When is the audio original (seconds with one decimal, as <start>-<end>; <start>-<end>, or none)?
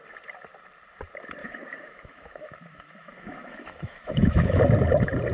0.0-1.4; 4.6-5.3